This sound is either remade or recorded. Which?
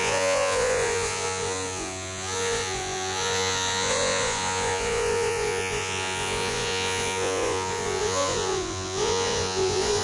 remade